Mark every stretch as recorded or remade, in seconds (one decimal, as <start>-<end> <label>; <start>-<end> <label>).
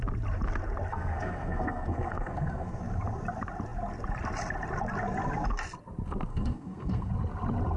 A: 0.0-0.9 recorded; 0.9-2.8 remade; 2.8-6.3 recorded; 6.3-7.1 remade; 7.1-7.8 recorded